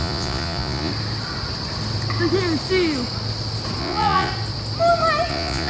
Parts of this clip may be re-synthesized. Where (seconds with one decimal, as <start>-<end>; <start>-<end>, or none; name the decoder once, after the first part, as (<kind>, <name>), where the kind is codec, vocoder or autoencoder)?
0.0-0.9 (vocoder, Vocos); 3.8-4.3; 5.3-5.7